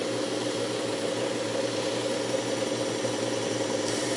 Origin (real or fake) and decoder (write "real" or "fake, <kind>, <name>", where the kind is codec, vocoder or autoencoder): fake, vocoder, BigVGAN v2